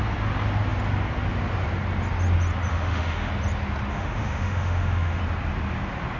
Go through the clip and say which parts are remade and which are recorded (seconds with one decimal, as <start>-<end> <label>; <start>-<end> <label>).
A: 0.0-2.7 recorded; 2.7-3.3 remade; 3.3-3.9 recorded; 3.9-5.2 remade; 5.2-6.2 recorded